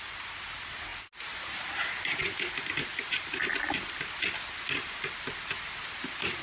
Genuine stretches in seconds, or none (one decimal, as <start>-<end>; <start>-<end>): 0.0-6.4